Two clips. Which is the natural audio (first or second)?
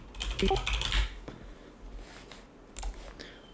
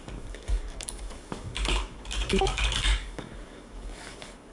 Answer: first